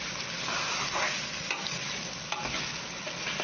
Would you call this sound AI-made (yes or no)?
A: no